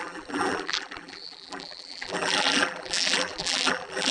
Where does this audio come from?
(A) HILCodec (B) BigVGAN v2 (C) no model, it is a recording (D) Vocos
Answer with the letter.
B